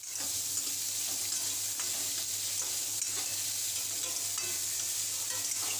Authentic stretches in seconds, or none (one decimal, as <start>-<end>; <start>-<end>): 0.0-5.8